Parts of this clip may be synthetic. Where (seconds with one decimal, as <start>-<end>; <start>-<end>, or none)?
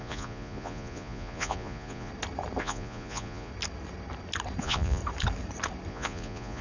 0.0-2.1; 2.6-3.5; 4.6-5.0; 5.9-6.6